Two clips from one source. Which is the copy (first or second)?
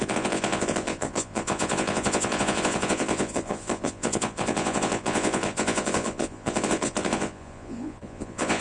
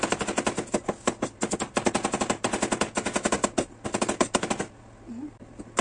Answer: first